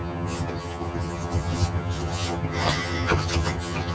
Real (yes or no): no